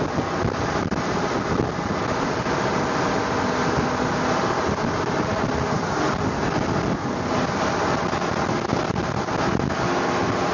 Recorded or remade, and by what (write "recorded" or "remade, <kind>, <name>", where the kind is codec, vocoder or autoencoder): recorded